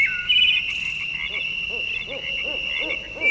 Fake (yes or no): no